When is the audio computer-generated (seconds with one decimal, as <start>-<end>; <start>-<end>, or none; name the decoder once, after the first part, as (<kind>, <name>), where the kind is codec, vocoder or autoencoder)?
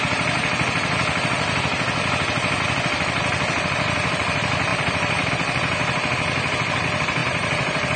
4.7-5.3 (vocoder, BigVGAN v2); 7.2-8.0